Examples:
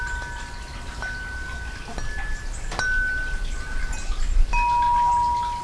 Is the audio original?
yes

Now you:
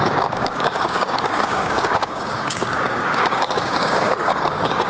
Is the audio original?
no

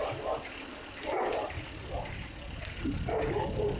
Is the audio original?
yes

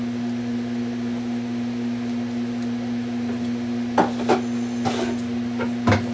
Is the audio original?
yes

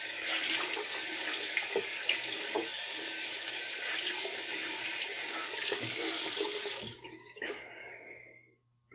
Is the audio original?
no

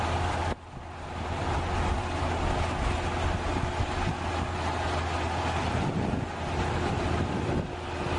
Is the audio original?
yes